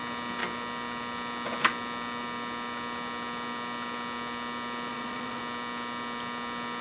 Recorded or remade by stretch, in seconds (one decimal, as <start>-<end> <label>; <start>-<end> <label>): 0.0-4.9 recorded; 4.9-5.4 remade; 5.4-6.8 recorded